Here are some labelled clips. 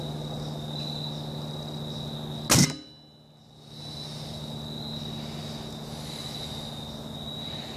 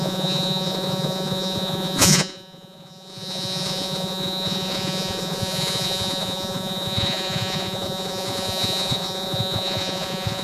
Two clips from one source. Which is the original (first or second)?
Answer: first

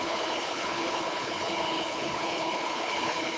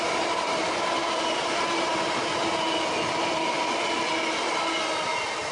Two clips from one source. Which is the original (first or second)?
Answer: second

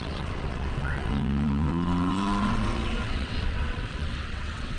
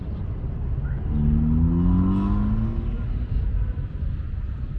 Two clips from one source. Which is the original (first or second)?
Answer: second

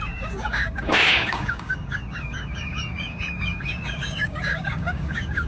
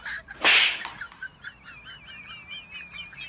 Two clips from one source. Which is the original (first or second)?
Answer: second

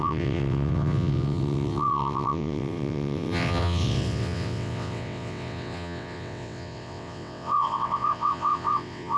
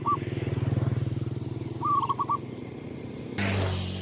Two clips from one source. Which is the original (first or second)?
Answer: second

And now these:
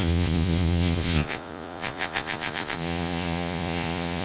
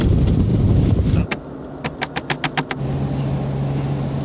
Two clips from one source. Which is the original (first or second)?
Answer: second